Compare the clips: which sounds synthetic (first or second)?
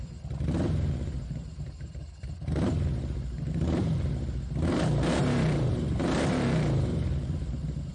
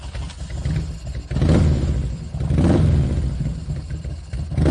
first